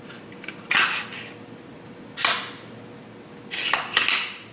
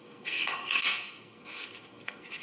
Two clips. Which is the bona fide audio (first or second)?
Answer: first